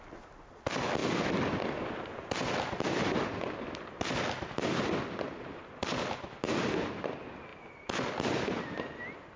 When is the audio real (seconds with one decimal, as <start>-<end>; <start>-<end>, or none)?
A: 0.0-9.4